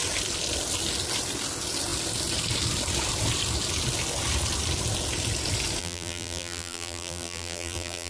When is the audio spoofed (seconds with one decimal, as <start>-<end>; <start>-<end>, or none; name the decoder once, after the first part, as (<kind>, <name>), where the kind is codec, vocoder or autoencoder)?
5.8-8.1 (vocoder, BigVGAN v2)